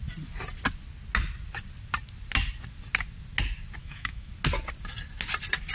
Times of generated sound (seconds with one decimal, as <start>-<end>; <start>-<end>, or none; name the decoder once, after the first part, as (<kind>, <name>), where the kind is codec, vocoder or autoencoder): 3.8-4.3 (autoencoder, DAC-VAE)